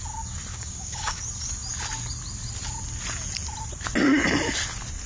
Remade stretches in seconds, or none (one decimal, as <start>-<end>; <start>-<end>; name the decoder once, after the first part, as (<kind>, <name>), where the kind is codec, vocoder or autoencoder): 0.5-1.2 (codec, DAC)